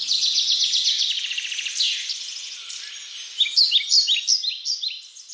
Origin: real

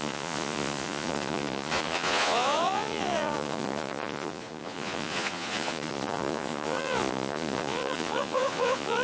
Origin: fake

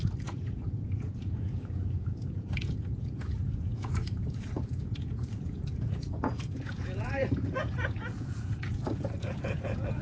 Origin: fake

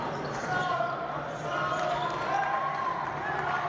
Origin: fake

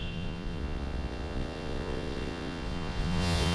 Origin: fake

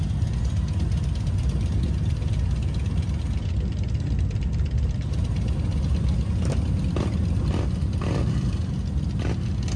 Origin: real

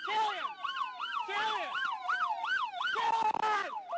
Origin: real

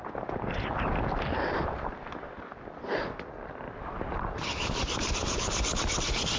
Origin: real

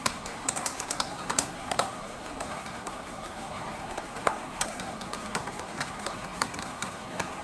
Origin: fake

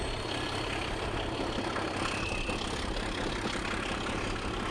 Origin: real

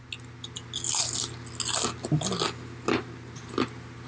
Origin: real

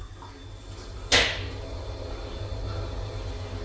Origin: real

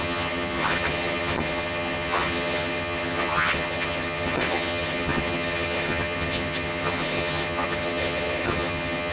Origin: fake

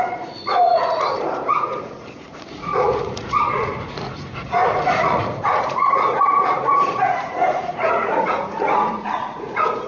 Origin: fake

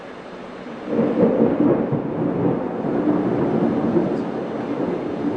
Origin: real